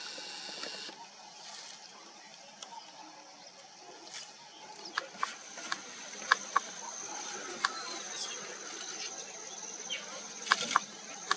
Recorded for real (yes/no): yes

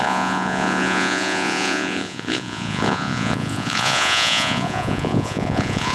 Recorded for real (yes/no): no